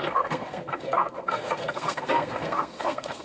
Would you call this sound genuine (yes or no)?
no